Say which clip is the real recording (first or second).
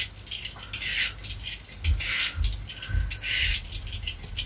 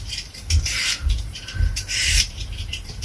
first